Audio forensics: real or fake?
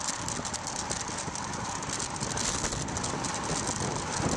real